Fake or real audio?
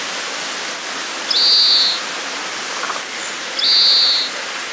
real